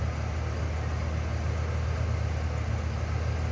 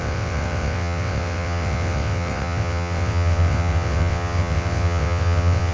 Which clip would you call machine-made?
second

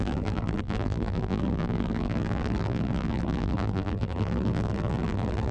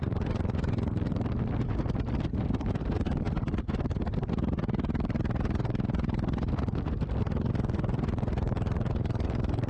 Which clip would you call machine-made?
first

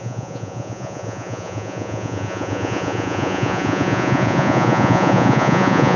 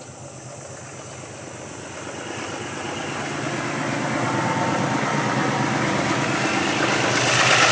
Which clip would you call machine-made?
first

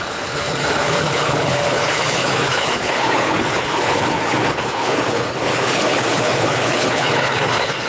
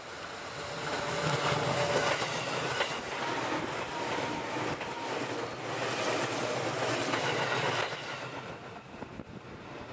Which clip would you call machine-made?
first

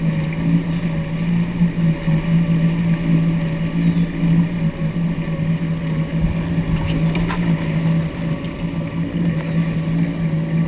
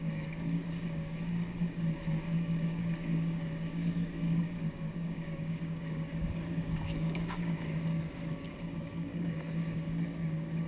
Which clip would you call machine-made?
second